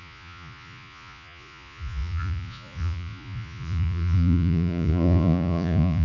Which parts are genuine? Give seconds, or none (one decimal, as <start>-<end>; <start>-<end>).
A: none